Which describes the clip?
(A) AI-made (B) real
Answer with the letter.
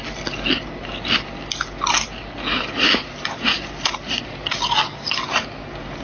B